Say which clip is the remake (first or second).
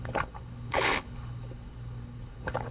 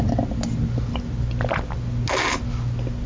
first